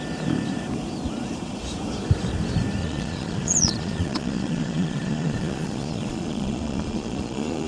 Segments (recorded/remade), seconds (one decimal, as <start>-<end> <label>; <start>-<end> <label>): 0.0-2.8 recorded; 2.8-7.7 remade